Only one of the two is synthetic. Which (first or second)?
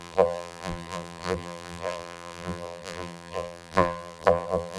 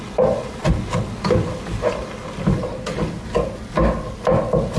first